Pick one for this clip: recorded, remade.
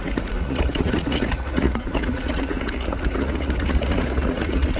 remade